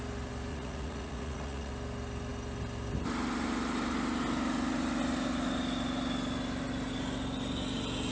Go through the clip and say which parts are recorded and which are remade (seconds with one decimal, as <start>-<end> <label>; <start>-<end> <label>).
0.0-0.5 recorded; 0.5-1.7 remade; 1.7-8.1 recorded

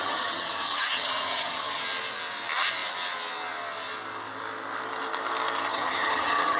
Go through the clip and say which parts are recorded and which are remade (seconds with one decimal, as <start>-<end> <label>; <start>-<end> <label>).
0.0-1.8 remade; 1.8-5.7 recorded; 5.7-6.6 remade

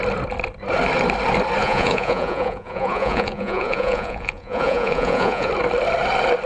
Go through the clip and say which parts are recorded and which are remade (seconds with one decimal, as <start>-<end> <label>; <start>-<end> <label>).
0.0-1.6 recorded; 1.6-5.5 remade; 5.5-6.5 recorded